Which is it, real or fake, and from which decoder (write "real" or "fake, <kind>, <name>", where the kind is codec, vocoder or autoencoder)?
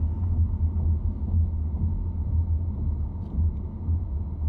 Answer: real